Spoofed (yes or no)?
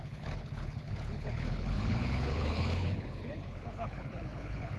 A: yes